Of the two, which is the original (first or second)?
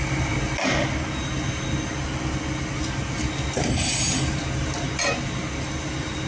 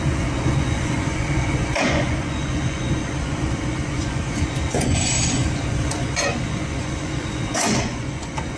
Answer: first